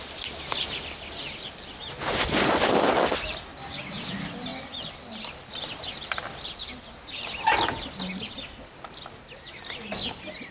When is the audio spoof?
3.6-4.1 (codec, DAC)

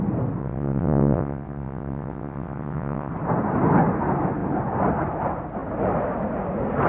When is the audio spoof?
0.4-3.1 (vocoder, WaveNeXt)

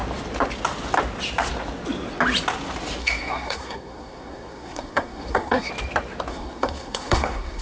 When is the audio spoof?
3.0-5.7 (codec, SNAC); 6.3-7.6

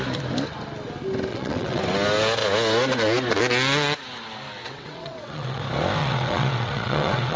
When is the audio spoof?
1.3-1.8 (vocoder, WaveNeXt); 4.6-5.6; 6.0-7.4